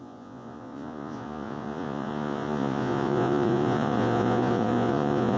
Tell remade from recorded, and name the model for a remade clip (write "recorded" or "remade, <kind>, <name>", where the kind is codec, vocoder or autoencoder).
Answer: remade, vocoder, Vocos